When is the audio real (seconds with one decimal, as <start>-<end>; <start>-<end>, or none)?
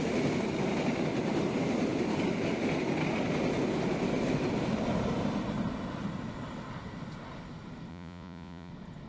0.0-7.9; 8.7-9.1